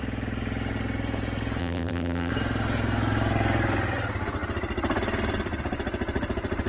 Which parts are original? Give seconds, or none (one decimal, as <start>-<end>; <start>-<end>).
0.0-1.6; 2.3-6.7